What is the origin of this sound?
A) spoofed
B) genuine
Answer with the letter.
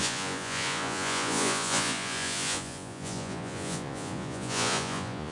A